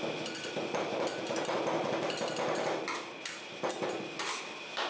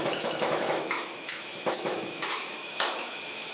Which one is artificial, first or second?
second